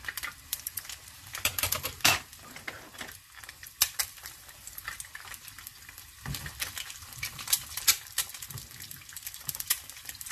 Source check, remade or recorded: remade